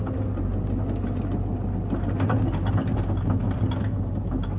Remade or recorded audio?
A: recorded